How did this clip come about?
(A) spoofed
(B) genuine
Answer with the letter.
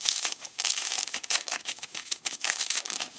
A